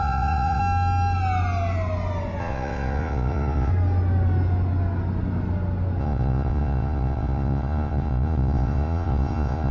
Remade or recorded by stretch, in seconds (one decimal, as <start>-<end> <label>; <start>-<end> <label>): 0.0-0.6 remade; 0.6-2.4 recorded; 2.4-3.7 remade; 3.7-6.0 recorded; 6.0-9.7 remade